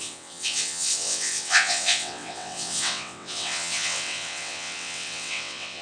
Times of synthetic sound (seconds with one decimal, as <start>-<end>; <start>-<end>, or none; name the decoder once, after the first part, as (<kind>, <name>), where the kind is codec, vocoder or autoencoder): 0.0-5.8 (vocoder, WaveNeXt)